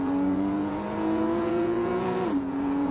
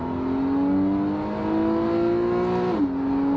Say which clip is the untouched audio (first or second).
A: second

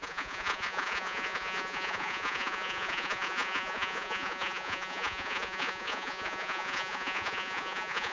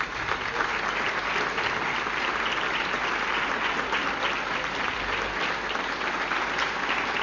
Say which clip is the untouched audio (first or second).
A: second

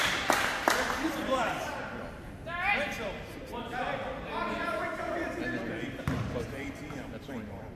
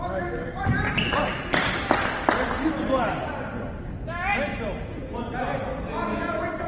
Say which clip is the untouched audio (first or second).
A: second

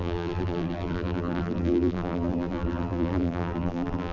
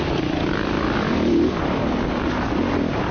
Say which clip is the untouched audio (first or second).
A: second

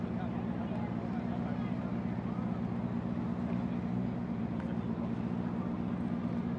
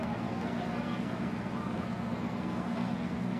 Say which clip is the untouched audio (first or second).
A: first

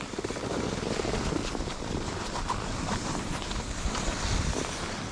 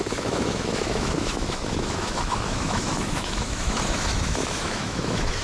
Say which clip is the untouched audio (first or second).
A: first